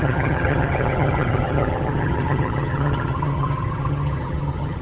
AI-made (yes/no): yes